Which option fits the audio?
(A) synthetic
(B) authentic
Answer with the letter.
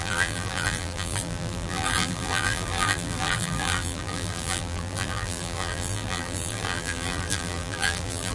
A